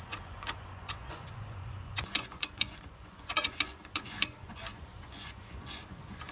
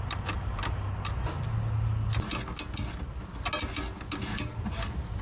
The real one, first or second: second